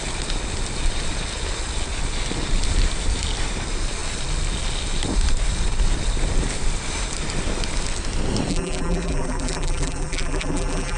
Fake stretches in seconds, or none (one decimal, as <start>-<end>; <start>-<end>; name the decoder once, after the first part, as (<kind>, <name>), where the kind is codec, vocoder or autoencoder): 8.5-11.0 (vocoder, BigVGAN v2)